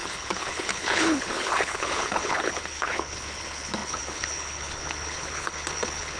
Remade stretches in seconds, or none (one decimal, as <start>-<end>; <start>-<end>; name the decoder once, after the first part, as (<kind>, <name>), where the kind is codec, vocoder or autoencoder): 0.0-6.2 (codec, HILCodec)